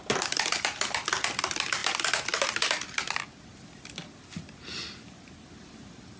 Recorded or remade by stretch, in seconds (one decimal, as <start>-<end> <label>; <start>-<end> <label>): 0.0-6.2 recorded